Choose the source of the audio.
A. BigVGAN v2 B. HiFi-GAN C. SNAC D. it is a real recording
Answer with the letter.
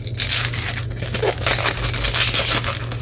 D